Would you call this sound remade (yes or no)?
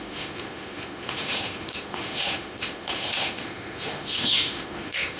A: yes